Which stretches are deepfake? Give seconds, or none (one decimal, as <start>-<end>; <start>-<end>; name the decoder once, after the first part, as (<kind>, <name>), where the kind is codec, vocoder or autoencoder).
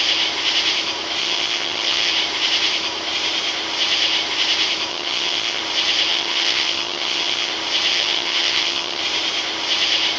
1.2-2.1 (vocoder, HiFi-GAN); 4.9-5.6; 6.1-7.5; 7.9-9.0